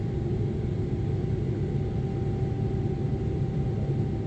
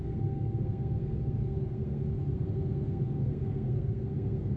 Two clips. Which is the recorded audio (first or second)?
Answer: first